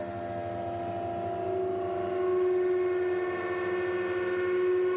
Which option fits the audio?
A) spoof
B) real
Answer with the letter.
B